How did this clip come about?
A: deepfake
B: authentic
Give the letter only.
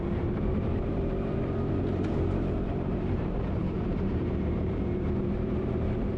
A